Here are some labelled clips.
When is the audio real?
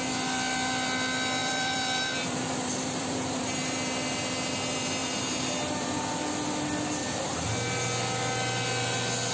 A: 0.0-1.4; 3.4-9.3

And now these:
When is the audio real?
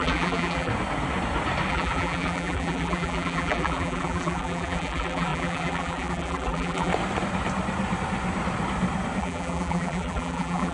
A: 0.7-1.7; 6.9-9.2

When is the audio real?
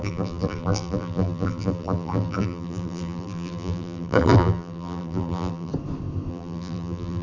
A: 5.7-6.3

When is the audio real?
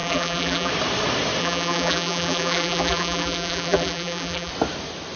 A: 0.7-1.4; 4.5-5.2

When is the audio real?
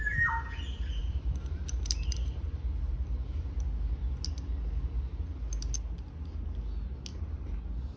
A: 0.0-1.0; 3.1-7.1; 7.6-8.0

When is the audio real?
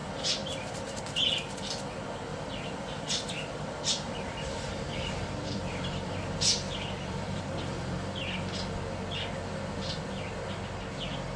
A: 1.0-2.3; 7.5-11.4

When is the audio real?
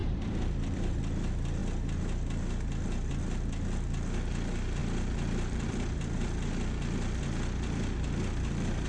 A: 1.0-4.8; 6.5-8.9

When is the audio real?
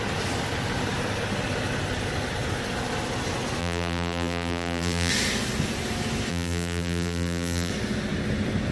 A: 0.0-3.6; 5.1-6.3; 7.7-8.7